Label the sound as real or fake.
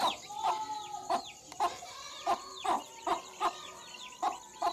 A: real